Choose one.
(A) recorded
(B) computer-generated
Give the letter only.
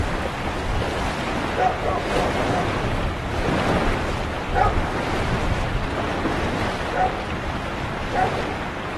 A